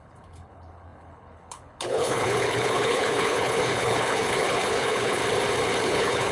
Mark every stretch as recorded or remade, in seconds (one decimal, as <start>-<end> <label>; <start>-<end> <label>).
0.0-5.2 remade; 5.2-5.8 recorded; 5.8-6.3 remade